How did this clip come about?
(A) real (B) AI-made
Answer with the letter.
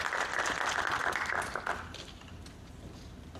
A